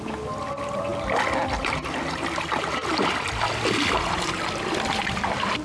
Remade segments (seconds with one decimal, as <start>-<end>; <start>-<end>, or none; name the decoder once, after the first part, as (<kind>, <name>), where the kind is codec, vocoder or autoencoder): none